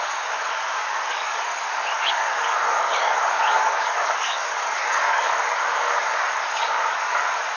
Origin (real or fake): fake